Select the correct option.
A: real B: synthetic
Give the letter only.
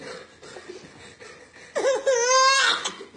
A